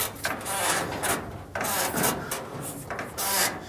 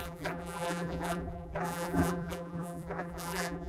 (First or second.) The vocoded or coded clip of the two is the second